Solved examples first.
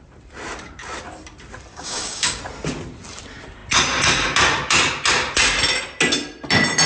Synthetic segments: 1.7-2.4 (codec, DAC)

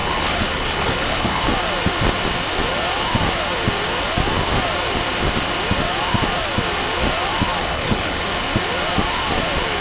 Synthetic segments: 0.0-1.4 (codec, HILCodec); 7.6-8.2